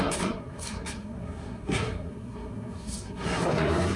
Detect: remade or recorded remade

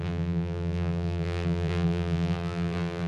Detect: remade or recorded remade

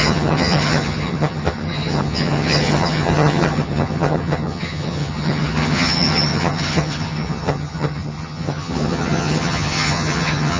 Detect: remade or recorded remade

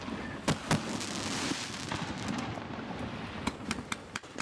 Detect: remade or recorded recorded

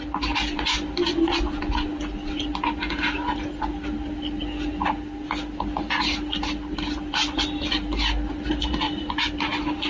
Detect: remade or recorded recorded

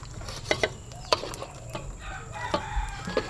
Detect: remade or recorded recorded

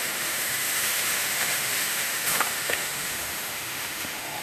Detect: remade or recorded remade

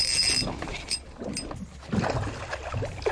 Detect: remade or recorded recorded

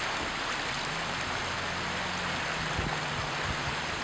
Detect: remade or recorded recorded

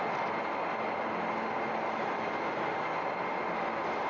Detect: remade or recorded recorded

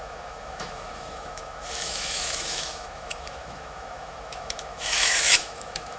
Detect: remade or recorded remade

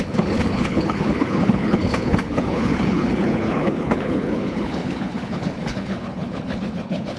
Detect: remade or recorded remade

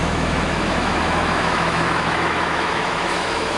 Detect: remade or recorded remade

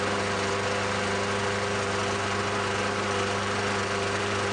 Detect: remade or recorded recorded